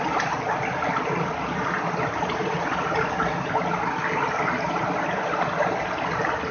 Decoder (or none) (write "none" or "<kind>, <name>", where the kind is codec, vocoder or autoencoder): none